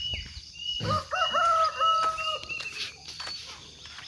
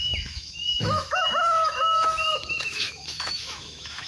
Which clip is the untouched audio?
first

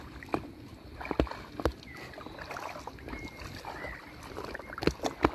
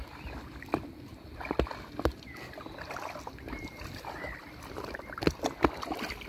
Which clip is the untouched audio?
first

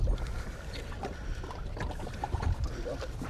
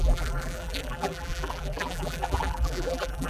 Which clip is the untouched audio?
first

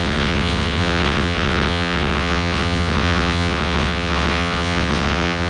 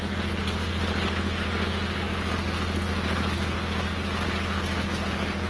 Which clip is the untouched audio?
second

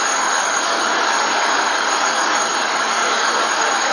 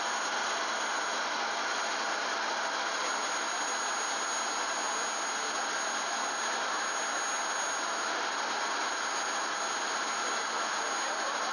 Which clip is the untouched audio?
second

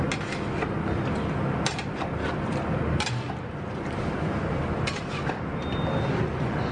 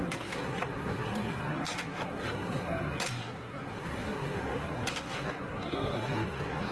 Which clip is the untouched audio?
first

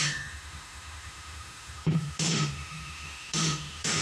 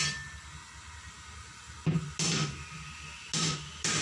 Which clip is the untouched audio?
second